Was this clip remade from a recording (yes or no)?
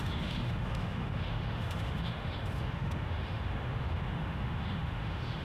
yes